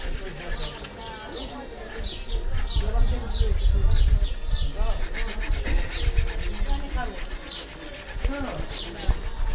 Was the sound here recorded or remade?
recorded